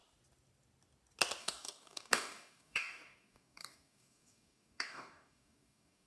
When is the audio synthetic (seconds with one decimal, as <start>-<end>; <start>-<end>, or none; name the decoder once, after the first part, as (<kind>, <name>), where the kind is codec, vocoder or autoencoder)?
1.4-6.1 (codec, DAC)